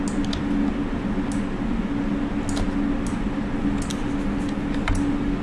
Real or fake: real